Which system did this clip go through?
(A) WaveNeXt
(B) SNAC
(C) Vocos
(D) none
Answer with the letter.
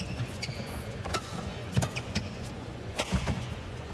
C